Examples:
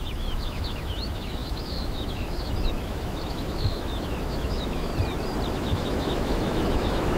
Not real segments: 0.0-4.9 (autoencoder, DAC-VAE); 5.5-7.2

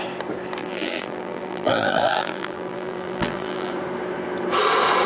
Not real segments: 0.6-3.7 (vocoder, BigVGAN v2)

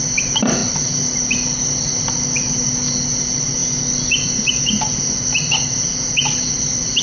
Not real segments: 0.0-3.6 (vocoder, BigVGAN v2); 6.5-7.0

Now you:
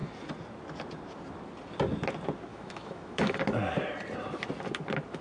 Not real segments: 2.5-3.4 (autoencoder, DAC-VAE)